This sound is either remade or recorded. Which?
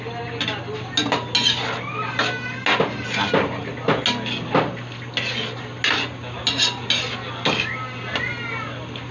recorded